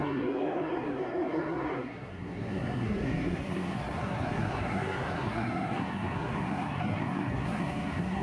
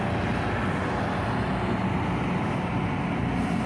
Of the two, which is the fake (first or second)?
first